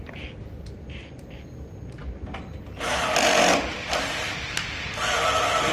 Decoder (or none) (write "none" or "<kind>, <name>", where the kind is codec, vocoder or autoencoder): none